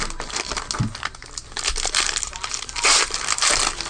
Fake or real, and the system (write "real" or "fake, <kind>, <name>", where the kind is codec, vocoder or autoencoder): real